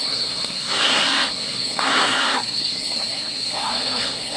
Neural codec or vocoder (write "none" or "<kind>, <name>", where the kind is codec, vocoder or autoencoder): codec, SNAC